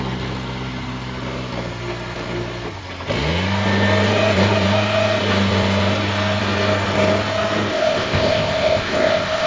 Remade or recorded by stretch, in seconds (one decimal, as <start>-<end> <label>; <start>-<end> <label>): 0.0-7.7 recorded; 7.7-9.5 remade